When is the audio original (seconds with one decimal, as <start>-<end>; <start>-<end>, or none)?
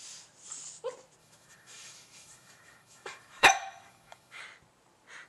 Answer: 0.0-1.2; 4.4-5.3